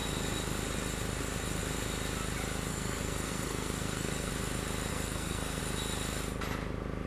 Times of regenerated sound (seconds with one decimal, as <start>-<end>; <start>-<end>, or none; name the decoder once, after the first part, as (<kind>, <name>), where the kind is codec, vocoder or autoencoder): 2.7-4.3 (codec, SNAC); 4.9-5.6